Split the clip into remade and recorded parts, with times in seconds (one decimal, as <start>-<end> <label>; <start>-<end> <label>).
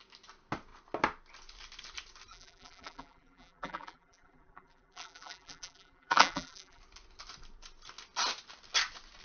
0.0-2.3 recorded; 2.3-6.8 remade; 6.8-9.2 recorded